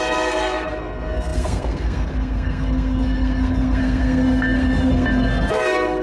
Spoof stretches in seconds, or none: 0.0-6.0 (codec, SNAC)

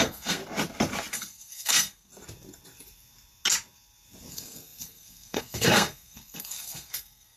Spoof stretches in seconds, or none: 0.0-0.4 (codec, SNAC); 1.1-2.1; 4.3-7.4